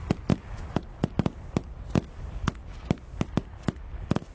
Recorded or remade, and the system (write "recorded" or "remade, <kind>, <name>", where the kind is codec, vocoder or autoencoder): recorded